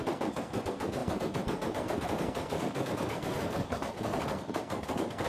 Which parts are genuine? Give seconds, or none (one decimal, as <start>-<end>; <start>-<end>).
none